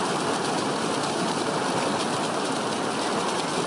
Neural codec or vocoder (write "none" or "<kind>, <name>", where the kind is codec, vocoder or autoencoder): none